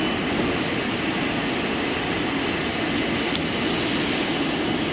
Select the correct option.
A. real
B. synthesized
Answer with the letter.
A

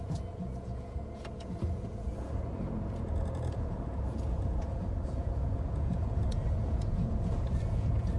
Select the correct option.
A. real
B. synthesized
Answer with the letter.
B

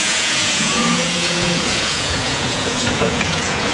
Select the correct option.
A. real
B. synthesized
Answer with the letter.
B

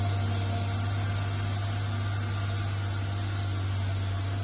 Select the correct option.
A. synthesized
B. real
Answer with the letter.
B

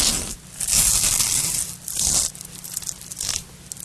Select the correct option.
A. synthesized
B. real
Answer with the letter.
B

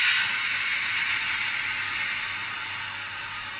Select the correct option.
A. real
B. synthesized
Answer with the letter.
A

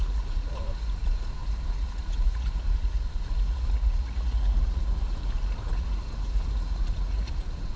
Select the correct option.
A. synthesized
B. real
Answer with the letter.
A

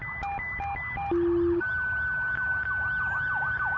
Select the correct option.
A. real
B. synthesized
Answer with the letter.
A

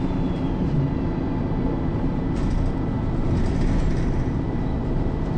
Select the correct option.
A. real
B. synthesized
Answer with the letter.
A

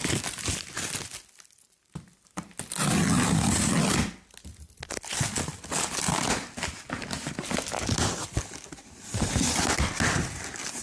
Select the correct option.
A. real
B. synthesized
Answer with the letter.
A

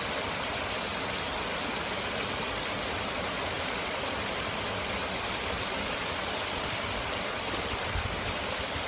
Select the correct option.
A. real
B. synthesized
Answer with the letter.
A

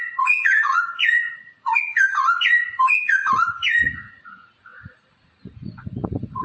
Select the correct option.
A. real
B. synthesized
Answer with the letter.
B